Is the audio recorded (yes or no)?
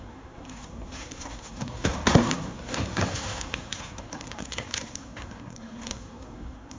no